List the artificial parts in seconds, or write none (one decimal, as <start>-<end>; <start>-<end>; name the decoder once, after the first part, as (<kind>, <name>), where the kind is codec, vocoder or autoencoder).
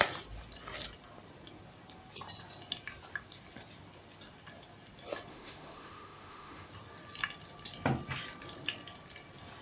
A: 5.3-6.7 (autoencoder, DAC-VAE)